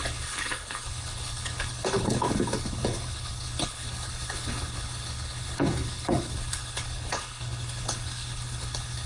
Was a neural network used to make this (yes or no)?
yes